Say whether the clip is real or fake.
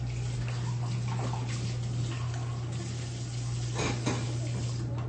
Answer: real